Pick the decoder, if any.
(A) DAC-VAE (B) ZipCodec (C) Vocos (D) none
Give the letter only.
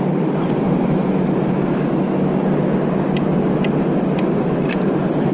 D